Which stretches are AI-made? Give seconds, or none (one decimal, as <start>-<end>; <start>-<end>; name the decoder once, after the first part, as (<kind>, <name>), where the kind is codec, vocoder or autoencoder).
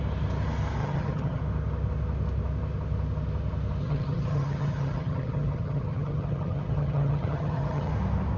0.8-1.4 (vocoder, HiFi-GAN); 3.8-7.9